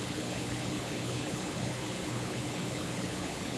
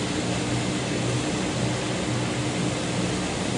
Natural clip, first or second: second